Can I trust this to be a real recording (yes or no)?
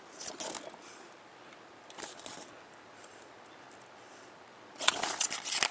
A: yes